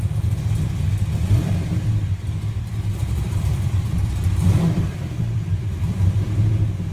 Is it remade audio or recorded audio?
remade